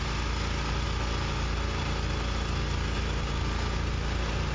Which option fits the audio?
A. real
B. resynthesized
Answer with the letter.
A